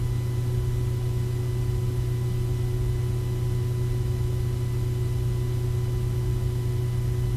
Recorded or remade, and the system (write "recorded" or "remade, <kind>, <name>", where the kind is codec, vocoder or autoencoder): recorded